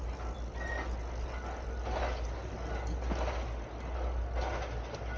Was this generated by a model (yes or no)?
no